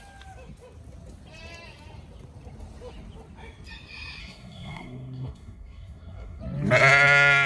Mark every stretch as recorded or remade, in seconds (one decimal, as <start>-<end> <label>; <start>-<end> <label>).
0.0-4.2 recorded; 4.2-6.4 remade; 6.4-7.5 recorded